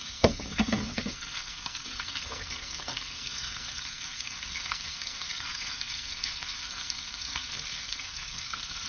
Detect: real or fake fake